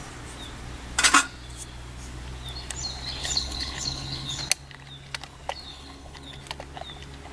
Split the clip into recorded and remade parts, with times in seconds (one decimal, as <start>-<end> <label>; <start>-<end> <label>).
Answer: 0.0-3.2 recorded; 3.2-4.4 remade; 4.4-5.7 recorded; 5.7-6.4 remade; 6.4-7.3 recorded